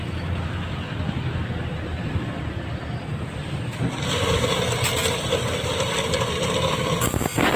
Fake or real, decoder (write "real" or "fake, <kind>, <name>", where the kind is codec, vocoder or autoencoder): real